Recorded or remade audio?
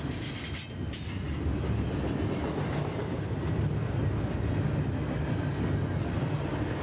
recorded